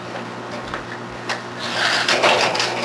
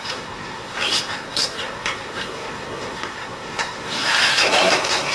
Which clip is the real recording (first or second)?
first